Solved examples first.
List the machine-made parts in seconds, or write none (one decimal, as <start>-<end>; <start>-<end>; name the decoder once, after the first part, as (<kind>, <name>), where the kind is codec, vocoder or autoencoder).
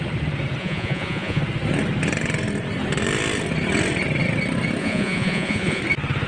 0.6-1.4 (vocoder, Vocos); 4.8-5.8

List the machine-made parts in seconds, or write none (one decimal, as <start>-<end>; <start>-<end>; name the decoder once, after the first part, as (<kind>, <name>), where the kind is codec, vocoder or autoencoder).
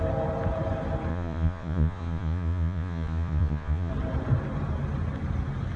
1.1-3.9 (vocoder, Vocos)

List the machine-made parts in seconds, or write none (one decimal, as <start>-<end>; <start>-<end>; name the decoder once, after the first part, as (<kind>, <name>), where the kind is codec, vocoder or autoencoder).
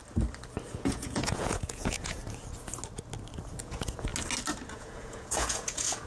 0.7-2.2 (vocoder, Vocos); 3.6-4.1; 4.7-6.1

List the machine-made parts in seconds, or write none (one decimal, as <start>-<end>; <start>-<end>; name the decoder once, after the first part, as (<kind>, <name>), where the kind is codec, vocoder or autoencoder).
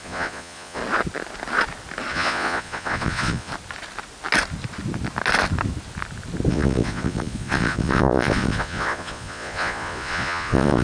0.0-0.8 (vocoder, Vocos); 2.1-3.5; 6.5-10.8